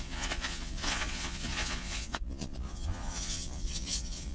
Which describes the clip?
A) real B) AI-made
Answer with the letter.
B